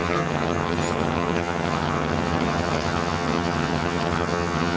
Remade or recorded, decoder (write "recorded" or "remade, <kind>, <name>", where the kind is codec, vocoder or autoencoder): remade, vocoder, HiFi-GAN